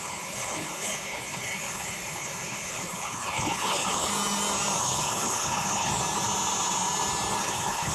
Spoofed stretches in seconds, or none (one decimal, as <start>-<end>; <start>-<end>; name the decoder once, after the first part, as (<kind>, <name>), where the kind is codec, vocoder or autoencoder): 0.0-4.1 (codec, HILCodec); 4.8-5.9; 7.4-7.9